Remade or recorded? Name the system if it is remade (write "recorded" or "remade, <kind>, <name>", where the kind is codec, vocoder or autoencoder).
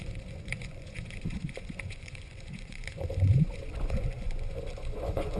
remade, vocoder, Vocos